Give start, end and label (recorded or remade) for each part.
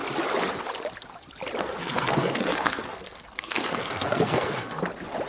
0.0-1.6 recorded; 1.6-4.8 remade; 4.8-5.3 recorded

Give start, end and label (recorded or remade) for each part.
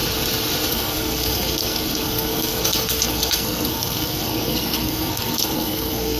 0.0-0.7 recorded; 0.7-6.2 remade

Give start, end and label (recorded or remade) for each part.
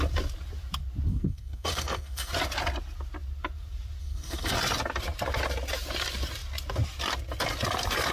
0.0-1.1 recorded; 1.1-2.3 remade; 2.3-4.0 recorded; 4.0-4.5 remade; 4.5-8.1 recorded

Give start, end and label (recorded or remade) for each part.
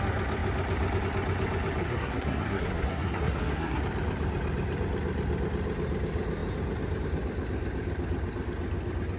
0.0-1.8 recorded; 1.8-3.8 remade; 3.8-9.2 recorded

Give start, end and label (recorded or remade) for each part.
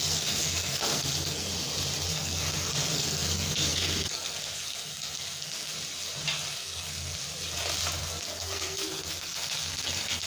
0.0-1.5 remade; 1.5-2.1 recorded; 2.1-5.7 remade; 5.7-6.5 recorded; 6.5-7.2 remade; 7.2-8.0 recorded; 8.0-10.3 remade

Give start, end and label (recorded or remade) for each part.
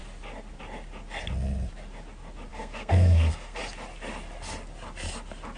0.0-2.5 recorded; 2.5-3.6 remade; 3.6-5.6 recorded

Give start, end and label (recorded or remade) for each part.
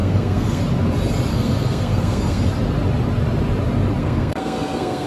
0.0-0.6 remade; 0.6-1.3 recorded; 1.3-2.5 remade; 2.5-4.0 recorded; 4.0-5.1 remade